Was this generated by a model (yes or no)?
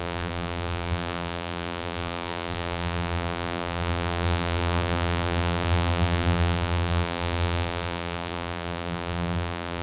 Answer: yes